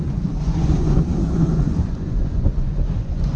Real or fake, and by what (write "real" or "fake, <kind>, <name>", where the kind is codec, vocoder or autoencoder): fake, vocoder, Vocos